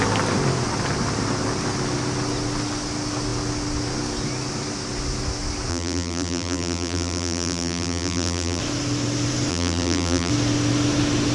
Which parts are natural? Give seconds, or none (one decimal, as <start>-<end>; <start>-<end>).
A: 0.0-5.7; 8.6-9.5; 10.3-11.3